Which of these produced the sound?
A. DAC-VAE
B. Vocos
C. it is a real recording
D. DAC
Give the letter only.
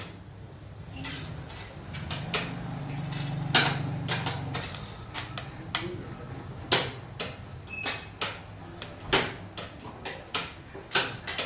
C